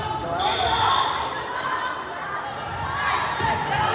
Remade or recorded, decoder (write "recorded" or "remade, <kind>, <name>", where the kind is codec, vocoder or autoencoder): recorded